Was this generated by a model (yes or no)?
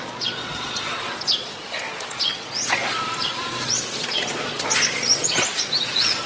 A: yes